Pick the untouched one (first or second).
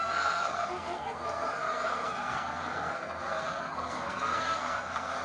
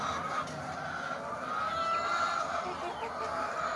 second